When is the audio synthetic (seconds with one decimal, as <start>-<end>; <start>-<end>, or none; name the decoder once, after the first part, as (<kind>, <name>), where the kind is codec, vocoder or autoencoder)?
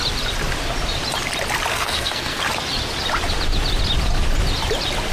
1.7-2.4 (codec, SNAC)